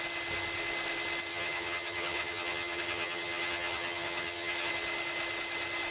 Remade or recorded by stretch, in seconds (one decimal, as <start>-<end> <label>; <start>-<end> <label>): 0.0-1.3 recorded; 1.3-4.7 remade; 4.7-5.9 recorded